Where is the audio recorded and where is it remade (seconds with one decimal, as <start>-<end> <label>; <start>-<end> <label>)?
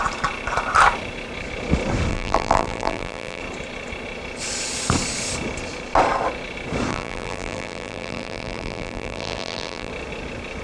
0.0-2.1 recorded; 2.1-3.4 remade; 3.4-6.9 recorded; 6.9-9.9 remade; 9.9-10.6 recorded